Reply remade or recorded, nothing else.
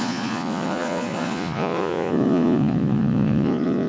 remade